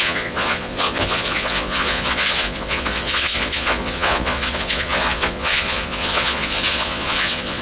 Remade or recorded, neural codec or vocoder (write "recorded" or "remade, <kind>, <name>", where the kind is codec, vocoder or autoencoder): remade, vocoder, Vocos